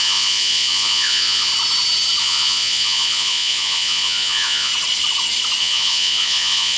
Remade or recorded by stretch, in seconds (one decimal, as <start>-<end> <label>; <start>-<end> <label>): 0.0-1.5 remade; 1.5-2.2 recorded; 2.2-4.7 remade; 4.7-5.6 recorded; 5.6-6.8 remade